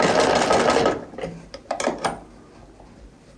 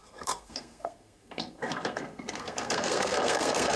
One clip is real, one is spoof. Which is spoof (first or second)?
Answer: second